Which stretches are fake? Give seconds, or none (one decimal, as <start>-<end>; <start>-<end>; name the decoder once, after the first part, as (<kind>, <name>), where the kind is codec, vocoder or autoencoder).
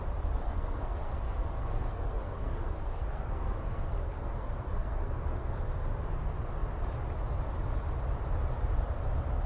0.4-5.6 (codec, SNAC)